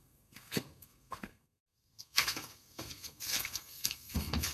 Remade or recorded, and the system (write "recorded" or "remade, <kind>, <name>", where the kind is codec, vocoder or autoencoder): remade, codec, SNAC